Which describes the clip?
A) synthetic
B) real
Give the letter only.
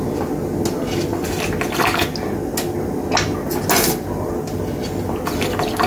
B